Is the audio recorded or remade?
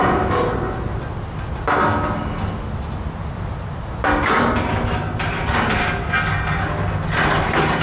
recorded